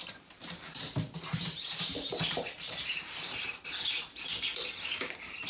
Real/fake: fake